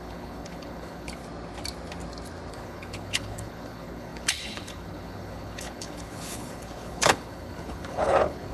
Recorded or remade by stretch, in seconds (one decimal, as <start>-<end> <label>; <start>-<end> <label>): 0.0-1.2 remade; 1.2-2.5 recorded; 2.5-8.5 remade